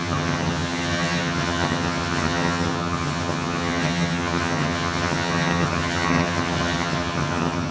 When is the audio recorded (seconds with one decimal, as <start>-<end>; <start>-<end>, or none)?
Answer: none